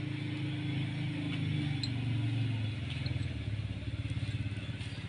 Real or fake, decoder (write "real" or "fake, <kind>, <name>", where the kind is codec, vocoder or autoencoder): real